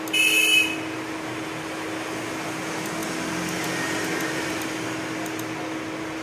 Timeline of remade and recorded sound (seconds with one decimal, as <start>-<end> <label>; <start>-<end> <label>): 0.0-6.2 recorded